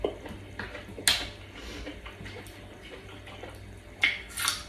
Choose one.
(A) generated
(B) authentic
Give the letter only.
B